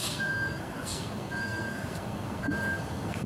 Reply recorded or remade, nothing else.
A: remade